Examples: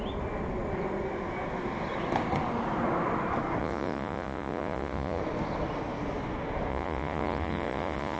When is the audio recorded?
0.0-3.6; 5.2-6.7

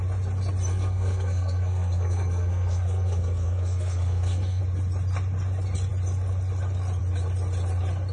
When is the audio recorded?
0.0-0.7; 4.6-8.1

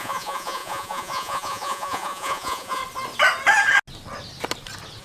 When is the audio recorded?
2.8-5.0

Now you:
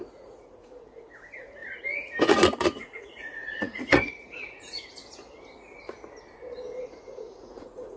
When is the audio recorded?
1.6-2.3; 5.0-6.8